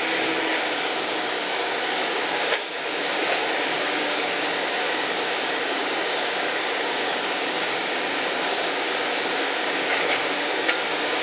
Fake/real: fake